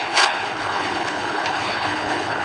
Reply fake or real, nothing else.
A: fake